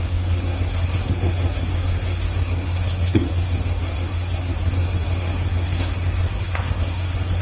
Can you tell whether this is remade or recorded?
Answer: remade